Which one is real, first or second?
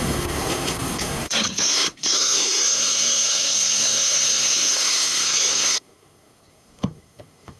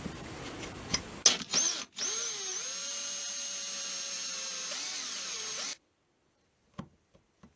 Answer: second